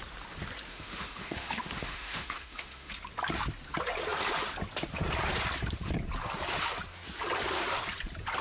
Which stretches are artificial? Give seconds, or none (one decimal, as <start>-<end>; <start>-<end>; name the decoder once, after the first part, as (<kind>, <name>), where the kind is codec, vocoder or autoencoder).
0.7-2.9 (autoencoder, DAC-VAE)